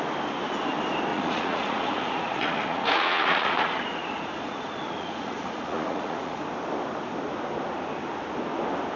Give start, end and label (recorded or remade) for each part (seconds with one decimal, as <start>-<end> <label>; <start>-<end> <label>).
0.0-1.1 recorded; 1.1-6.4 remade; 6.4-9.0 recorded